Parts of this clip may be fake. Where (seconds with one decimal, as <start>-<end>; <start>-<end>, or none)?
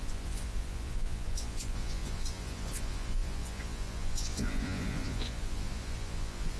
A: 0.0-6.6